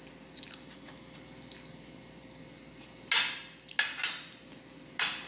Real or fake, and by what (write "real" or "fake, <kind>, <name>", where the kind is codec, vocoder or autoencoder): real